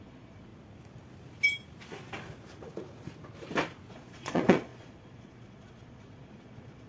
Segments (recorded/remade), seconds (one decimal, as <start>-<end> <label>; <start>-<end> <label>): 0.0-0.5 remade; 0.5-3.9 recorded; 3.9-6.9 remade

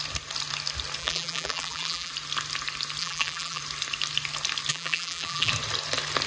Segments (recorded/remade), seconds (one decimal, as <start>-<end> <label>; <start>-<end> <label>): 0.0-1.0 recorded; 1.0-2.1 remade; 2.1-3.0 recorded; 3.0-3.6 remade; 3.6-4.7 recorded; 4.7-5.5 remade; 5.5-6.3 recorded

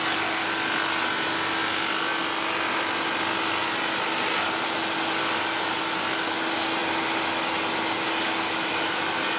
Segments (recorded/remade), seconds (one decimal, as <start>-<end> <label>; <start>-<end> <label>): 0.0-9.4 recorded